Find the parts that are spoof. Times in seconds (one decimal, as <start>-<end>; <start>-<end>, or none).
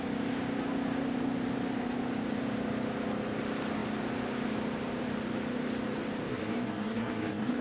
6.3-7.6